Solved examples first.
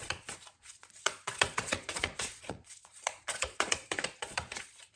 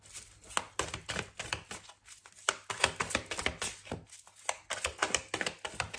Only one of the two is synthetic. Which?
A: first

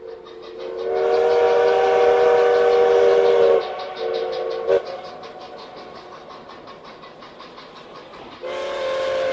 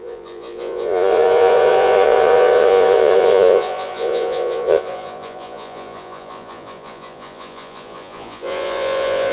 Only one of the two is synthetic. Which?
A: second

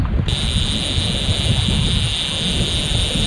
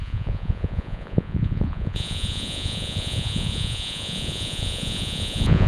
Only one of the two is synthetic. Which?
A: second